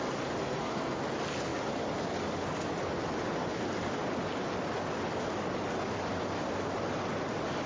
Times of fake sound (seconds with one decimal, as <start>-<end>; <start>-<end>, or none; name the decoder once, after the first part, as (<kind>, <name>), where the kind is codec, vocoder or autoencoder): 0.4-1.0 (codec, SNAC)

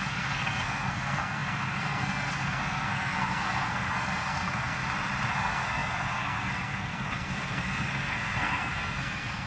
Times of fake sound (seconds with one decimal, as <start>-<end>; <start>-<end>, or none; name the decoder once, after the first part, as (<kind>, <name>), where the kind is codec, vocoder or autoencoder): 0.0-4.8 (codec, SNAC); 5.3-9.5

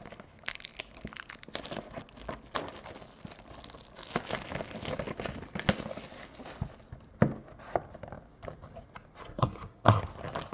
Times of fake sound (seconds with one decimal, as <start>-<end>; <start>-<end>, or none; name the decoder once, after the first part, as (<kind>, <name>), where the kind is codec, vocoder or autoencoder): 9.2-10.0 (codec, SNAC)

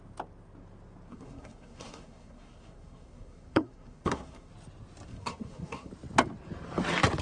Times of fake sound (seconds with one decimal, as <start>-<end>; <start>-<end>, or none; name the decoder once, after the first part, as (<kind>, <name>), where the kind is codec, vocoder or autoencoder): 1.1-4.5 (codec, SNAC); 5.1-5.9